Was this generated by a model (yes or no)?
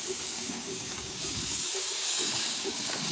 yes